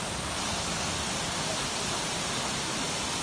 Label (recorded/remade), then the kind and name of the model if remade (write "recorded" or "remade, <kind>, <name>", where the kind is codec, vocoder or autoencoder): recorded